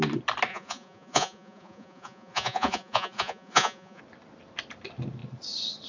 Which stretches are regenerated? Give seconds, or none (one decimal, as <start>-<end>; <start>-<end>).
0.5-4.0